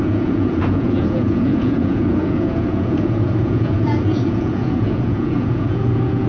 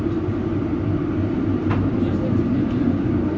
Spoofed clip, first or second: first